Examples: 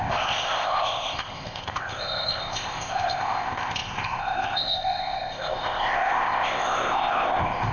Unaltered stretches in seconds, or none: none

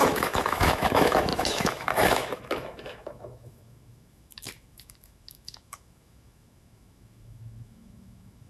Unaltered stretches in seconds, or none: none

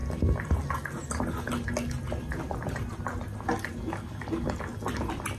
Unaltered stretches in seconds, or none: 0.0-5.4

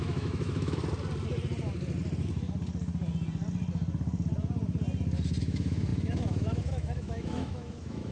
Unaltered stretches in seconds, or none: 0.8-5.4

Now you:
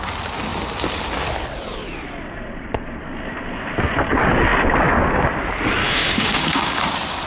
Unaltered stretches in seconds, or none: 0.0-5.8; 6.8-7.3

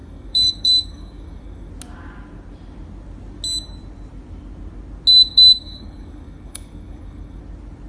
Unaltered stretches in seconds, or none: 1.7-5.1; 7.4-7.9